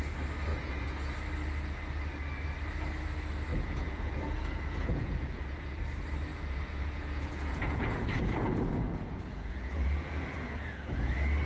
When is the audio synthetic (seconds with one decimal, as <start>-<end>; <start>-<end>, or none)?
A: 0.5-1.1; 3.5-5.8; 6.3-11.1